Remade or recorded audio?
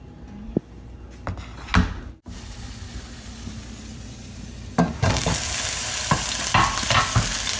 recorded